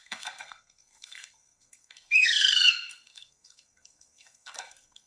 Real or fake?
fake